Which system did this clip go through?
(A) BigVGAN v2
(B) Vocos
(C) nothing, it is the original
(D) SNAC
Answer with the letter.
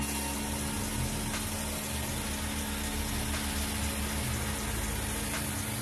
C